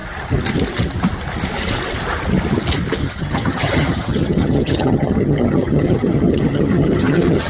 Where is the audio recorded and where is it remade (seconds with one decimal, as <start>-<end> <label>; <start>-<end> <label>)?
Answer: 0.0-3.0 recorded; 3.0-7.5 remade